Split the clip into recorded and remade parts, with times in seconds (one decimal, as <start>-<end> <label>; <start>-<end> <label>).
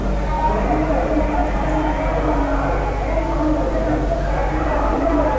0.0-0.9 recorded; 0.9-1.4 remade; 1.4-4.6 recorded; 4.6-5.4 remade